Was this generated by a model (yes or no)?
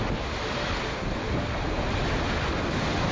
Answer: no